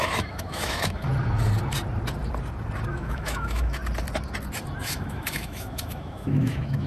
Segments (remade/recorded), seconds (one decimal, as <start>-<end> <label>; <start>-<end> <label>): 0.0-1.1 remade; 1.1-2.9 recorded; 2.9-3.8 remade; 3.8-4.8 recorded; 4.8-6.9 remade